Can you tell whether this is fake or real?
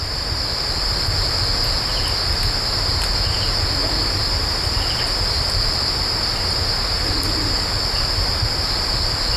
real